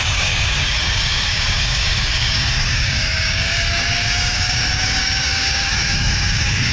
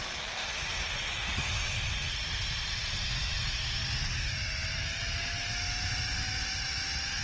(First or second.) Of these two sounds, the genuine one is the second